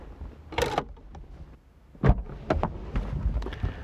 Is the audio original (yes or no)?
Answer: yes